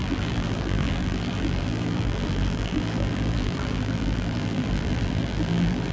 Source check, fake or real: fake